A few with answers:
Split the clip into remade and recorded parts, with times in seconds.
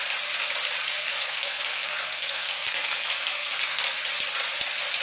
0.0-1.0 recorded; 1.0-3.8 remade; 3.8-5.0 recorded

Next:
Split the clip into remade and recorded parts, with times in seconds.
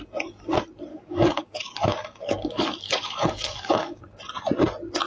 0.0-0.9 recorded; 0.9-4.0 remade; 4.0-5.1 recorded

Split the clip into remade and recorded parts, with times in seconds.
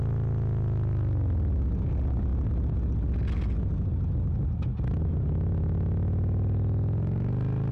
0.0-7.7 recorded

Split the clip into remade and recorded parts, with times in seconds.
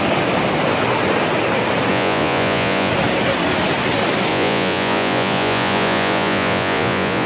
0.0-1.9 recorded; 1.9-2.9 remade; 2.9-4.3 recorded; 4.3-7.3 remade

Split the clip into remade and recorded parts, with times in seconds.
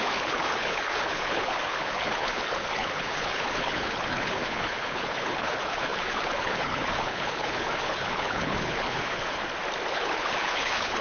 0.0-9.4 remade; 9.4-9.9 recorded; 9.9-11.0 remade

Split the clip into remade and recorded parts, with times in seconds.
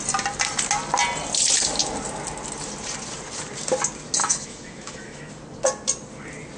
0.0-4.2 recorded; 4.2-5.3 remade; 5.3-6.6 recorded